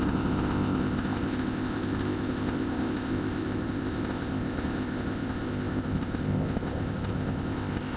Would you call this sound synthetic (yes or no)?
yes